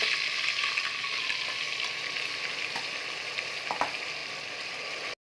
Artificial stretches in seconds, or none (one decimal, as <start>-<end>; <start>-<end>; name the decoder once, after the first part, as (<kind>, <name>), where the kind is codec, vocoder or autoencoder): none